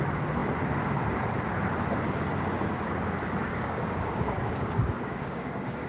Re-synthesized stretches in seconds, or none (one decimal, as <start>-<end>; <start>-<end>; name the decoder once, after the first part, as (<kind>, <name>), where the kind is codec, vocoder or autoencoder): 3.5-5.9 (codec, DAC)